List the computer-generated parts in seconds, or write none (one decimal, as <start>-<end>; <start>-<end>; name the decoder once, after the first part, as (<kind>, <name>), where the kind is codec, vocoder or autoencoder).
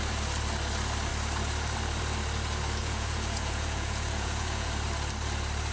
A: 2.8-4.7 (vocoder, Vocos)